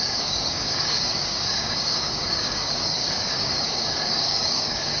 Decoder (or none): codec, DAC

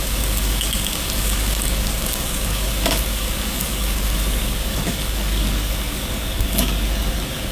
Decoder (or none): codec, DAC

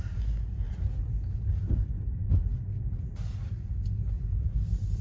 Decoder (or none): none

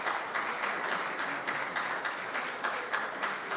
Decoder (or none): none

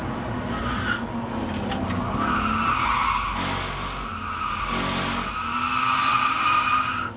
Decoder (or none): none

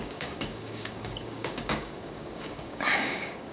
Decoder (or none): codec, DAC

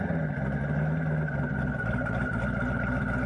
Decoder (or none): none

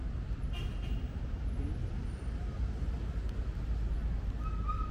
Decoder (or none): none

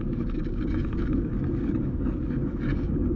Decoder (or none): codec, DAC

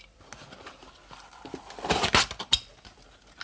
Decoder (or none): none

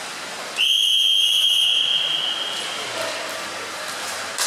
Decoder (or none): none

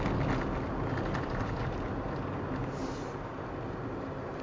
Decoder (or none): none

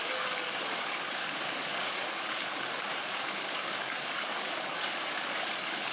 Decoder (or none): codec, DAC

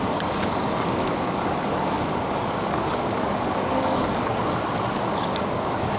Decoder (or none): codec, DAC